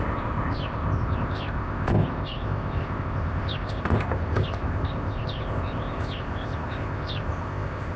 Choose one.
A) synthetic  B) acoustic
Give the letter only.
A